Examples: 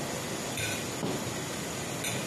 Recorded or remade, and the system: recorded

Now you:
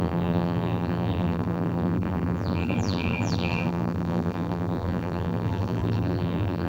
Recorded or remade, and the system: remade, vocoder, BigVGAN v2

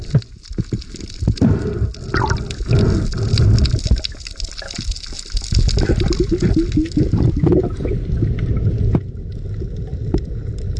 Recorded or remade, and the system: recorded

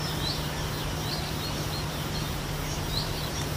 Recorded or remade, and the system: remade, vocoder, BigVGAN v2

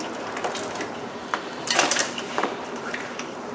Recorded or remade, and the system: remade, vocoder, BigVGAN v2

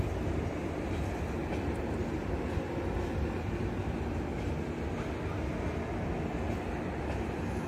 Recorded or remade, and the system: recorded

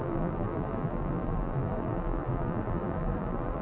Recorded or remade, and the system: remade, vocoder, BigVGAN v2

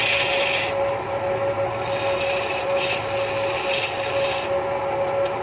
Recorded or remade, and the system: recorded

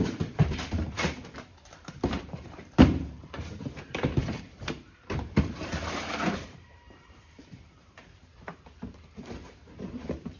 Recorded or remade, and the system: remade, vocoder, BigVGAN v2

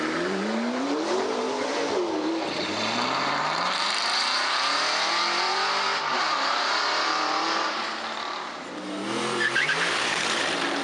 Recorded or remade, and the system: remade, vocoder, BigVGAN v2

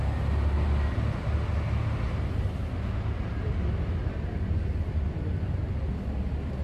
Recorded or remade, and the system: recorded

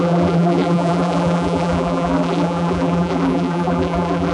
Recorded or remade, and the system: remade, vocoder, BigVGAN v2